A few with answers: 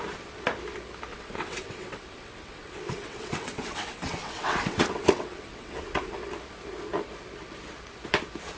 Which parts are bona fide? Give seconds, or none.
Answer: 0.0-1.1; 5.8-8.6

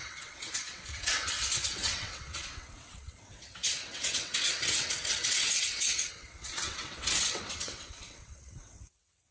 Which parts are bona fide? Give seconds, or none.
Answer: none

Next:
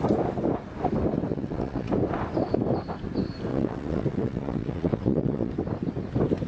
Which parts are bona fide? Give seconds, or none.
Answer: 0.0-1.3; 1.9-3.5; 5.5-6.5